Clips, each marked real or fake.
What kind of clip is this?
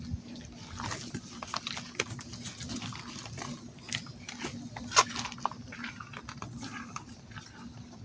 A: real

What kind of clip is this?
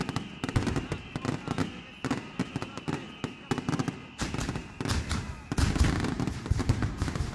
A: real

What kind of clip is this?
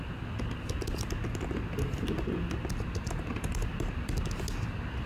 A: real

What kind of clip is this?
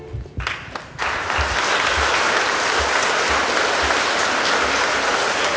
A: real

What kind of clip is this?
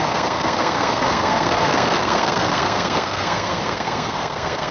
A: fake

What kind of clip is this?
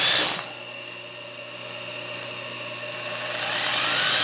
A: real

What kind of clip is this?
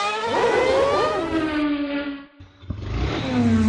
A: real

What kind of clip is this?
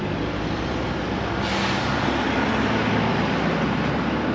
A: real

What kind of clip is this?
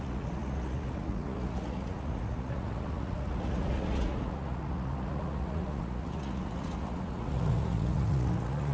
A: fake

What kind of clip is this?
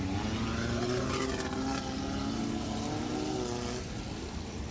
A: real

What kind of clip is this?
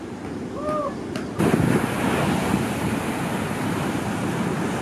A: real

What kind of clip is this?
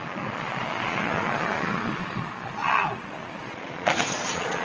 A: fake